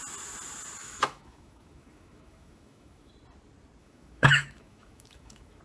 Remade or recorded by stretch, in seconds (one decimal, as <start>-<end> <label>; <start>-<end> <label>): 0.0-0.8 recorded; 0.8-3.1 remade; 3.1-3.8 recorded; 3.8-5.6 remade